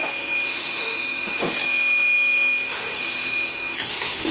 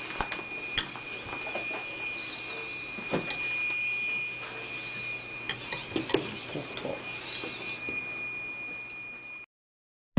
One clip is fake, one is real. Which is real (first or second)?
second